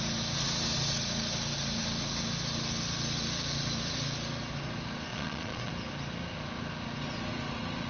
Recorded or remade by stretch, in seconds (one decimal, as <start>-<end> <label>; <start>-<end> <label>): 0.0-5.1 recorded; 5.1-5.7 remade; 5.7-7.9 recorded

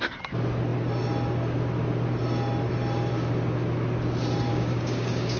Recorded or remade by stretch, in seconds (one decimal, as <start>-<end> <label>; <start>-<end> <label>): 0.0-4.5 recorded; 4.5-5.4 remade

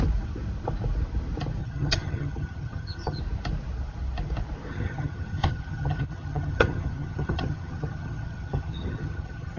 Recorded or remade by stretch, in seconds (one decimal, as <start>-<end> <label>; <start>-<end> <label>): 0.0-1.6 recorded; 1.6-3.2 remade; 3.2-4.7 recorded; 4.7-9.6 remade

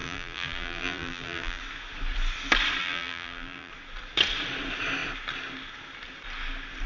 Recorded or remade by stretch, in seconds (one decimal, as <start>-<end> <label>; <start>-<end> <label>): 0.0-1.6 remade; 1.6-2.8 recorded; 2.8-3.7 remade; 3.7-6.9 recorded

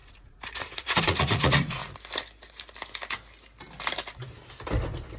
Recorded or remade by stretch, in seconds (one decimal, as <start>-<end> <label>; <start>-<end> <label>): 0.0-1.8 remade; 1.8-5.2 recorded

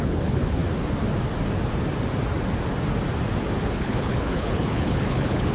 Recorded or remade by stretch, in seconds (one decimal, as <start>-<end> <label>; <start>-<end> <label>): 0.0-0.6 remade; 0.6-3.7 recorded; 3.7-5.5 remade

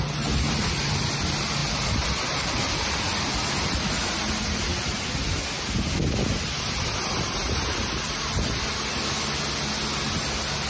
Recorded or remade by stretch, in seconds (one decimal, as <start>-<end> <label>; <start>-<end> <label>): 0.0-10.7 recorded

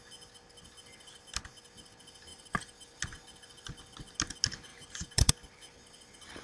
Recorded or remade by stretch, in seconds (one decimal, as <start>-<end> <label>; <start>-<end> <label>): 0.0-2.3 recorded; 2.3-3.0 remade; 3.0-4.7 recorded; 4.7-5.3 remade; 5.3-6.4 recorded